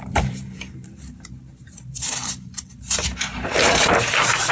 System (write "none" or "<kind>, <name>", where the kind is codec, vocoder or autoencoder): vocoder, BigVGAN v2